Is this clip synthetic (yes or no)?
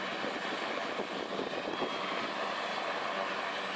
no